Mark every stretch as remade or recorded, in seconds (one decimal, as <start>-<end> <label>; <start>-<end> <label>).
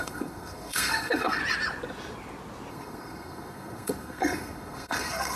0.0-1.4 remade; 1.4-2.7 recorded; 2.7-5.4 remade